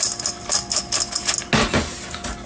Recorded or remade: recorded